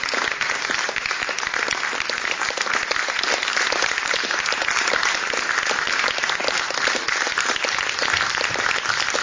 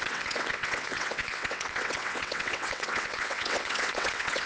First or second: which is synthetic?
second